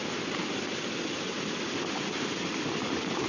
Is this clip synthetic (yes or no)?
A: no